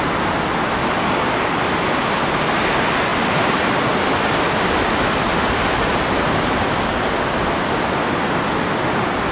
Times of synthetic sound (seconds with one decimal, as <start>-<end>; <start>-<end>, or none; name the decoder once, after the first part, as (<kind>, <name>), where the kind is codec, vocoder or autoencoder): none